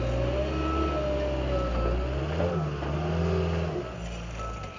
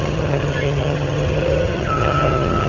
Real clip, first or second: first